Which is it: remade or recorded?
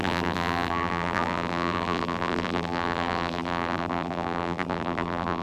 remade